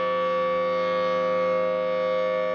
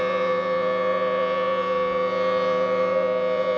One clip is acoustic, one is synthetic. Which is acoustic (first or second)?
first